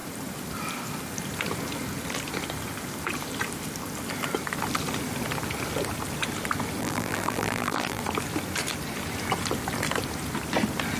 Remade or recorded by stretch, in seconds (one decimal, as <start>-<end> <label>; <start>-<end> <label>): 0.0-6.8 recorded; 6.8-8.0 remade; 8.0-11.0 recorded